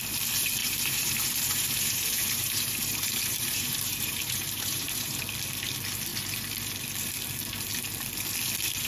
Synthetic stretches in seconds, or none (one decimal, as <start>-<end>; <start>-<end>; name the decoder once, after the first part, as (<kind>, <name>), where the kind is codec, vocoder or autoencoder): 0.6-5.2 (vocoder, BigVGAN v2)